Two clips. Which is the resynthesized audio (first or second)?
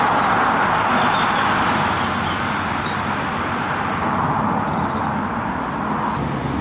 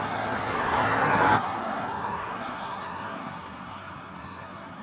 second